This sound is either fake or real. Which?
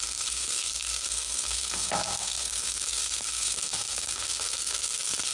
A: fake